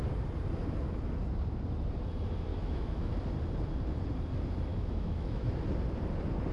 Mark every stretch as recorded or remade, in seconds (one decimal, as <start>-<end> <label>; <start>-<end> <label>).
0.0-2.5 recorded; 2.5-3.1 remade; 3.1-4.7 recorded; 4.7-5.5 remade; 5.5-6.5 recorded